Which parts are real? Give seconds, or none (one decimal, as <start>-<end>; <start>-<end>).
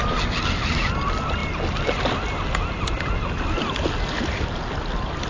0.0-5.3